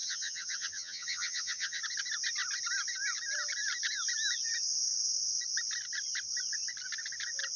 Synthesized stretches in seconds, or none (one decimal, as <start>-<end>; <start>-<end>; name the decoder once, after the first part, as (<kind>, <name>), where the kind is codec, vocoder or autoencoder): 0.0-1.8 (vocoder, HiFi-GAN)